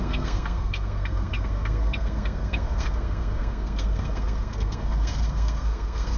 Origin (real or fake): fake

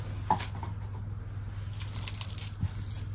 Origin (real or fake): real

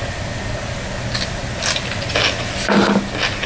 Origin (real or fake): real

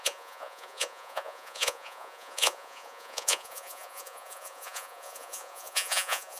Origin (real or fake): fake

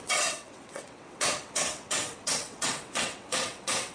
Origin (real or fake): fake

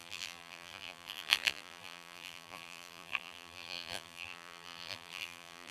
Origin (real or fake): fake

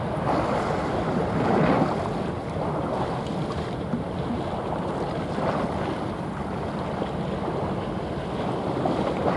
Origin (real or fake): real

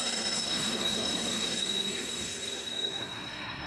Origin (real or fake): fake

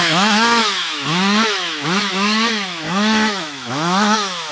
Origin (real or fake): fake